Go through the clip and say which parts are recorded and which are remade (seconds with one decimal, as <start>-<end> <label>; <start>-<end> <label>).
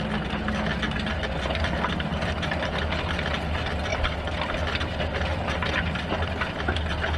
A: 0.0-2.1 recorded; 2.1-3.2 remade; 3.2-7.2 recorded